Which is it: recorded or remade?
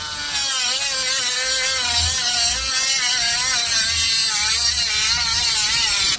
recorded